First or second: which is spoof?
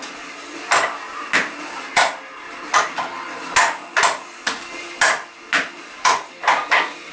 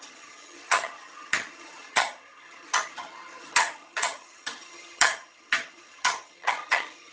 second